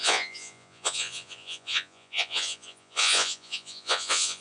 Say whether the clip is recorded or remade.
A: remade